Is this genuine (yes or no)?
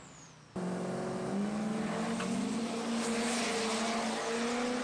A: yes